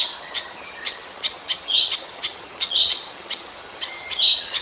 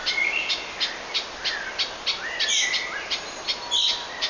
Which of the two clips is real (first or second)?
second